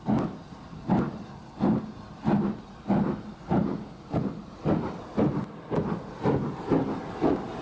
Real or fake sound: real